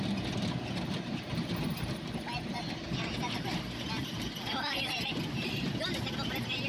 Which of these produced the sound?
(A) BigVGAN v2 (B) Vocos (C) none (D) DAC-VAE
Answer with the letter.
C